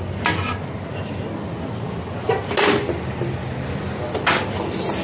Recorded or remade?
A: recorded